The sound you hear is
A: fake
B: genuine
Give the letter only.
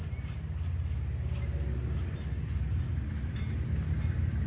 B